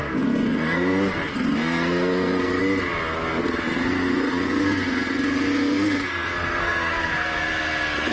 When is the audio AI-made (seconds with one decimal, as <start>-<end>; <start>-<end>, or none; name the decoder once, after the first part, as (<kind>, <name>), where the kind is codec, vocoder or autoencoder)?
0.0-2.6 (codec, SNAC); 3.7-7.4